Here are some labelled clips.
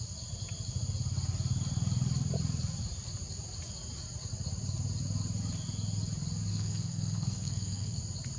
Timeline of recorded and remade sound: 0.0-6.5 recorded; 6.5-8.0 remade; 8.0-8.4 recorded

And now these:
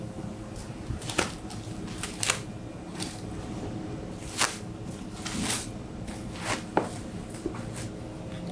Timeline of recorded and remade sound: 0.0-0.6 recorded; 0.6-1.4 remade; 1.4-8.5 recorded

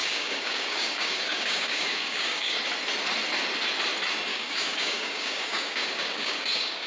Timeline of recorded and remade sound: 0.0-2.6 remade; 2.6-4.3 recorded; 4.3-6.9 remade

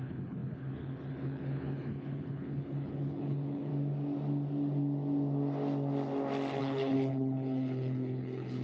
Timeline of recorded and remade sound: 0.0-3.7 remade; 3.7-6.6 recorded; 6.6-8.6 remade

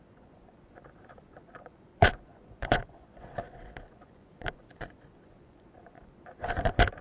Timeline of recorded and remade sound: 0.0-7.0 remade